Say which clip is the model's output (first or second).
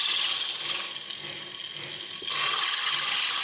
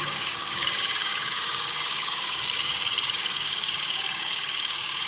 second